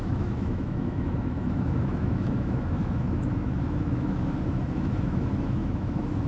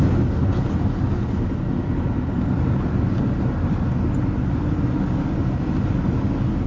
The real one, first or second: second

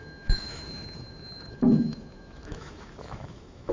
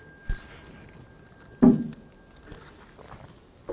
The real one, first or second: second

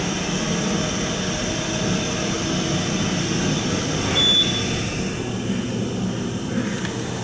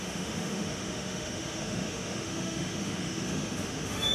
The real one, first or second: first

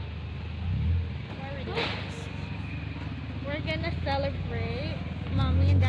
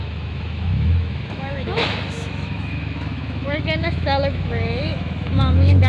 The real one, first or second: first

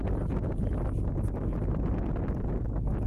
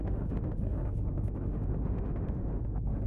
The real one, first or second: first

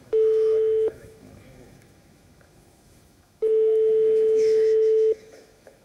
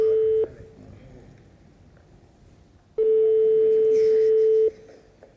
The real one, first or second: second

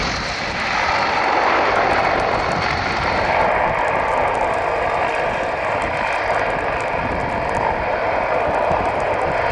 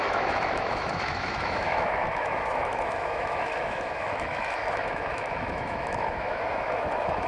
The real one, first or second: first